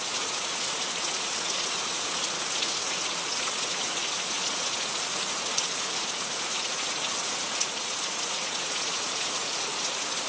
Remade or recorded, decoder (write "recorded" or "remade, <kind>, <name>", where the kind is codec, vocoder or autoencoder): remade, vocoder, Vocos